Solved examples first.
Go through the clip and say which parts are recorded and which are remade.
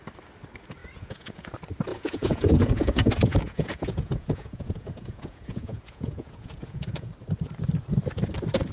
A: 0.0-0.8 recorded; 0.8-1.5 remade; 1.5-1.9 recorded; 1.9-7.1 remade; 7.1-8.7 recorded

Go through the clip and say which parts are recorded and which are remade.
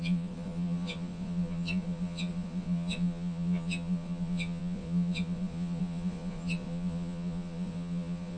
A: 0.0-8.4 remade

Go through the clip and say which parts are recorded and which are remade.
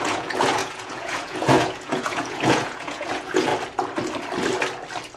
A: 0.0-3.5 remade; 3.5-5.2 recorded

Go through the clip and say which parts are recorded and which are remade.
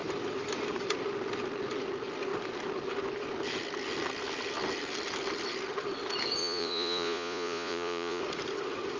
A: 0.0-6.4 recorded; 6.4-8.2 remade; 8.2-9.0 recorded